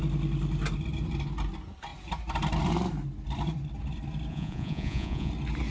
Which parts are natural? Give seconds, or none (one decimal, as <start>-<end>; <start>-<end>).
0.0-4.3; 5.3-5.7